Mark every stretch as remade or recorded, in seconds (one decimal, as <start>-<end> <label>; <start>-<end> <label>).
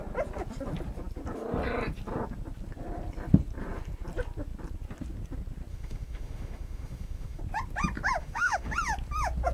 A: 0.0-5.7 recorded; 5.7-7.4 remade; 7.4-8.2 recorded; 8.2-8.7 remade; 8.7-9.5 recorded